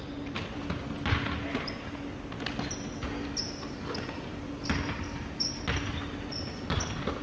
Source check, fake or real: real